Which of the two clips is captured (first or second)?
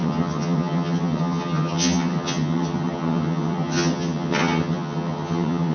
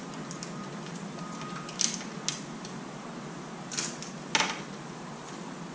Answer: second